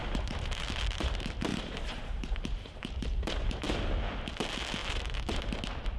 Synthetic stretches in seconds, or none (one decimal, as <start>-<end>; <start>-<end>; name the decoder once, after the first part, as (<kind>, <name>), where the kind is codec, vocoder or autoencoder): 0.0-1.1 (vocoder, BigVGAN v2); 1.5-3.7; 4.8-5.6